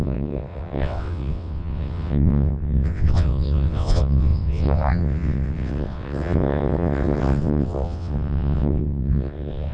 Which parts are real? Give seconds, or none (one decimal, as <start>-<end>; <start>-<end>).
none